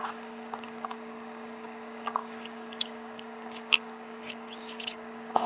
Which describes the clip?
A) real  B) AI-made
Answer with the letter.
B